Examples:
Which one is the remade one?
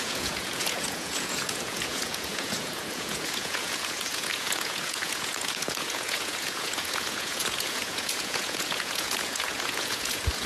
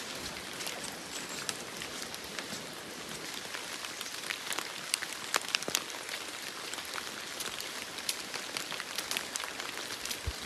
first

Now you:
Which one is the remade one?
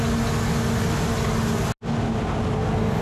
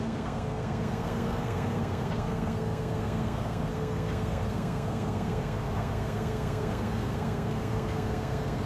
second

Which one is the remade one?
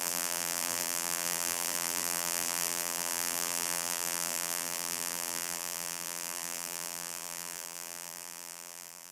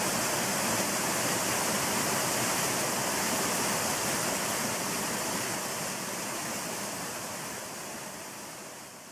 first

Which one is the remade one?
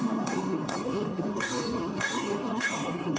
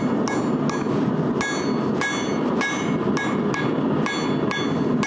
first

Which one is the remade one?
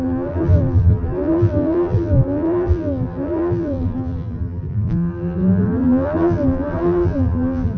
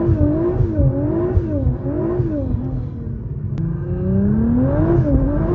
first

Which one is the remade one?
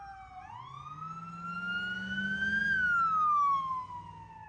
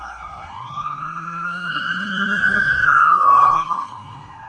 second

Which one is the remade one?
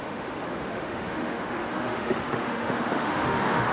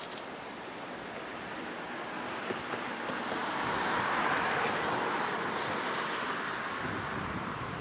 first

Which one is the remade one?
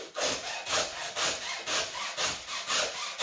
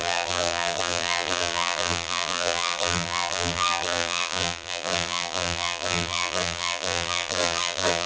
second